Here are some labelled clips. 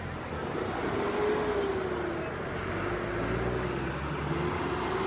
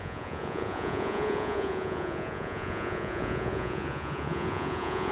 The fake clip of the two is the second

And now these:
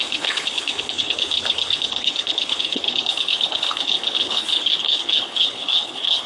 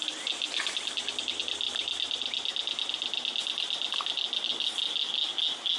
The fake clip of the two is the first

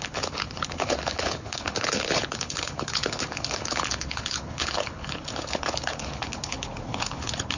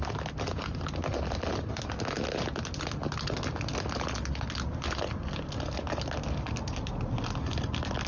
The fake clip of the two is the first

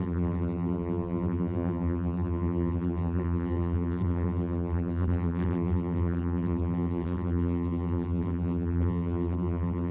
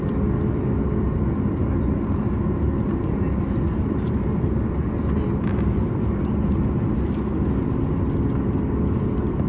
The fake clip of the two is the first